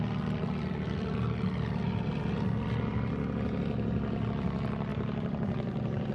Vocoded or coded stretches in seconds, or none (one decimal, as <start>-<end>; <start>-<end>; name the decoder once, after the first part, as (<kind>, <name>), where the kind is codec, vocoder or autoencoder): 4.9-6.1 (vocoder, BigVGAN v2)